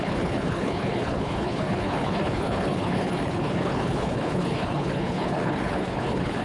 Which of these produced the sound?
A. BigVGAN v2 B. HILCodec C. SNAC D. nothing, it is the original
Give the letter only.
B